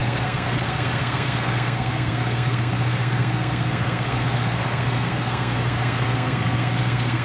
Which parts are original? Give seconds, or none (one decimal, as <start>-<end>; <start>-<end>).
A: none

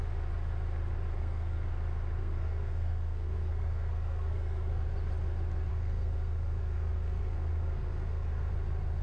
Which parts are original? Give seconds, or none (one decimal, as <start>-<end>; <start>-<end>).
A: 0.0-1.2; 1.7-2.2; 4.8-5.7; 8.5-9.0

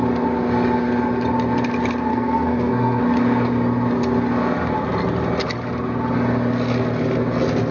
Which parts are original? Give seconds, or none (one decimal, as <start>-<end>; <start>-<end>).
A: 0.0-2.1; 3.0-7.7

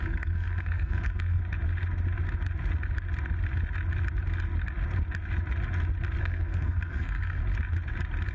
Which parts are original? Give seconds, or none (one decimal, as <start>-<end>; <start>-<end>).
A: 1.4-6.2; 7.4-8.3

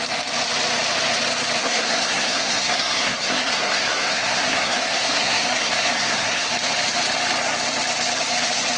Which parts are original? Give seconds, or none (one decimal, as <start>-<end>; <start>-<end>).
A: 0.0-1.6; 6.5-8.8